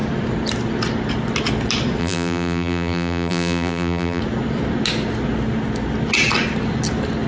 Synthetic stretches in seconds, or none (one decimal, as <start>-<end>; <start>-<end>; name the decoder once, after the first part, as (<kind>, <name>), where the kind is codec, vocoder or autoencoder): 2.0-4.2 (vocoder, BigVGAN v2)